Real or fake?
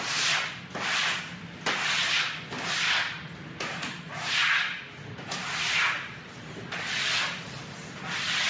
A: real